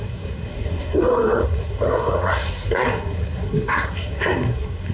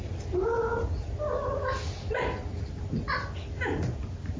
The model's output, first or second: first